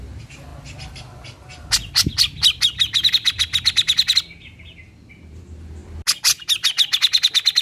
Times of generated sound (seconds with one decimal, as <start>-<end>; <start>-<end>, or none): none